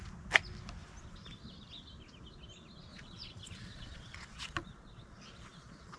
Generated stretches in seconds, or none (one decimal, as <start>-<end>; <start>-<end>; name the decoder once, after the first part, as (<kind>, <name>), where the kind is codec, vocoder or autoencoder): 2.9-6.0 (vocoder, Vocos)